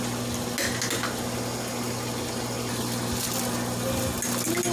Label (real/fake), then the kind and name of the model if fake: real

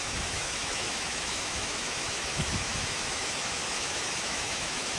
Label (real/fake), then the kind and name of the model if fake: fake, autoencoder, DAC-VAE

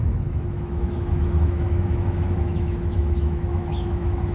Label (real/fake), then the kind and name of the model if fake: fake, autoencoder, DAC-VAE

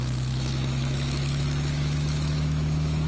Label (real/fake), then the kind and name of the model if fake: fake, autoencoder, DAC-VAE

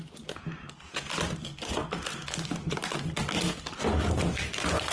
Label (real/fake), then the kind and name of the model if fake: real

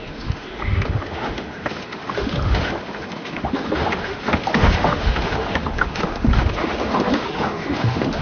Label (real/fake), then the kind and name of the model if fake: fake, autoencoder, DAC-VAE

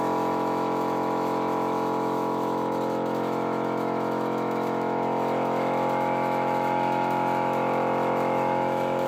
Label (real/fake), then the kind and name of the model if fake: fake, autoencoder, DAC-VAE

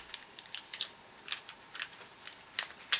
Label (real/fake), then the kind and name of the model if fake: real